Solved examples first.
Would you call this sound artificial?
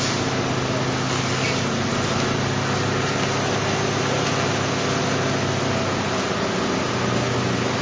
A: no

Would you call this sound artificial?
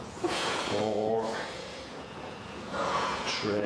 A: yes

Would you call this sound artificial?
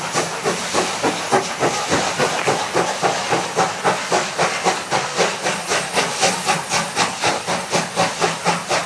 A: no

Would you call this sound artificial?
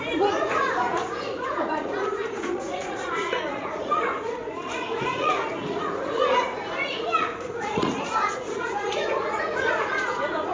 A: yes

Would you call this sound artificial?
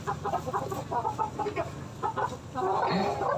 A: no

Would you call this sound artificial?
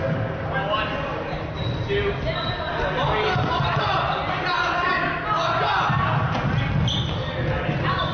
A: no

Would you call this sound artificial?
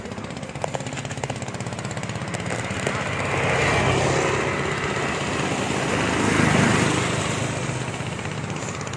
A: no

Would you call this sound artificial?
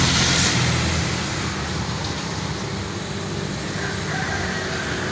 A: no